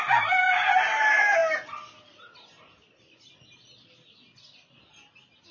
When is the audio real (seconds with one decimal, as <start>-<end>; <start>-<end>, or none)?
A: 0.0-5.5